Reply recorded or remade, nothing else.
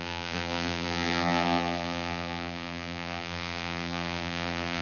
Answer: remade